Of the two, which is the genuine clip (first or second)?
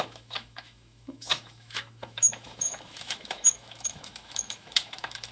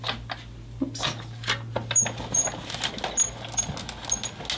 second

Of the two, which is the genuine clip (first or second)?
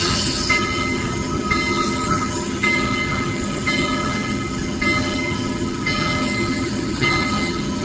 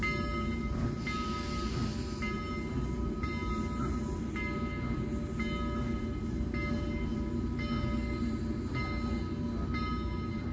second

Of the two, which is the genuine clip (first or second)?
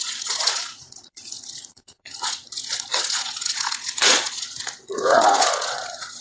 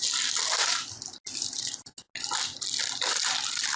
second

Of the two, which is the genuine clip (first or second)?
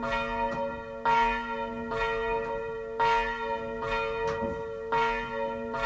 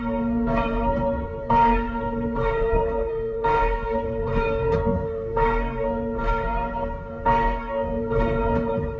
first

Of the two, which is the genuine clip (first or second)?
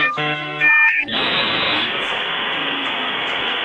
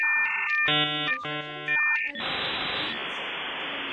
second